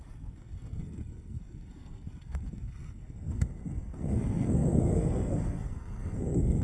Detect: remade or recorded remade